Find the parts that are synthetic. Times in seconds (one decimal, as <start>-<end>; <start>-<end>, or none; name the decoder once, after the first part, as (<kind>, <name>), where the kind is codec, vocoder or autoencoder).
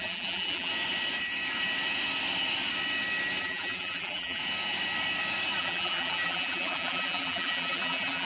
0.0-0.7 (vocoder, BigVGAN v2); 3.4-4.4; 5.6-8.2